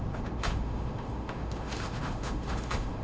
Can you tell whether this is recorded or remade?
remade